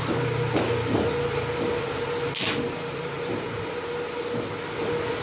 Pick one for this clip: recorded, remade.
recorded